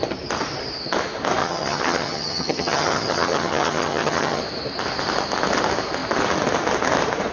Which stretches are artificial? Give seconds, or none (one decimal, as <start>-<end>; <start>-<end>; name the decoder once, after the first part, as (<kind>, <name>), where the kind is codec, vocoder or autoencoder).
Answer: 1.4-4.4 (vocoder, HiFi-GAN)